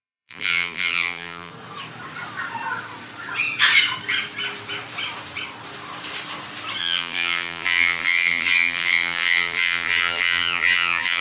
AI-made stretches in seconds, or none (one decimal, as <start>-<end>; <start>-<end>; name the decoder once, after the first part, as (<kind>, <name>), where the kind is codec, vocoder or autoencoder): 0.0-1.5 (vocoder, BigVGAN v2); 6.8-11.2